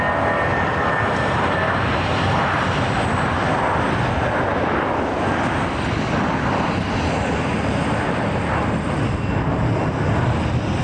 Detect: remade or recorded recorded